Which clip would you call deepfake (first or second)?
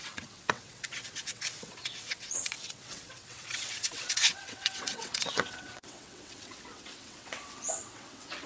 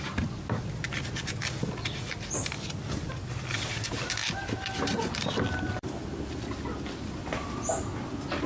first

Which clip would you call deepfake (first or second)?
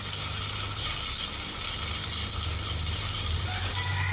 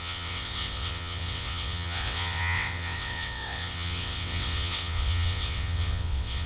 second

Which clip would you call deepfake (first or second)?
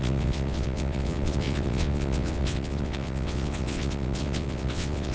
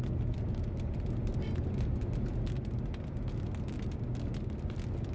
first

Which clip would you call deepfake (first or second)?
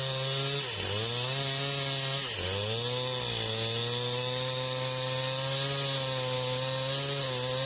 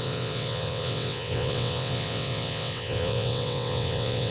second